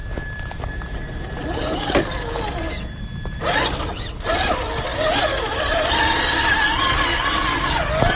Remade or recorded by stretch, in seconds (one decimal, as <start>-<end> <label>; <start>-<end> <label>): 0.0-8.2 recorded